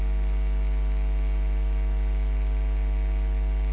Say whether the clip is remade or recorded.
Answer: recorded